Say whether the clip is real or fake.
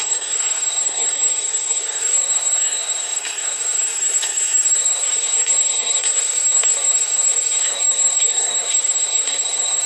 fake